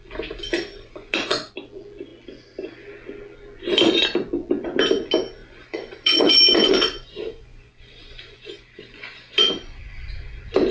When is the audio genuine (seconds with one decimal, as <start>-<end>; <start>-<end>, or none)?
0.0-0.7; 1.5-5.4; 9.8-10.7